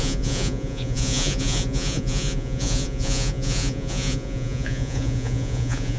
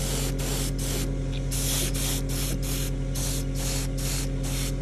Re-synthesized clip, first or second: first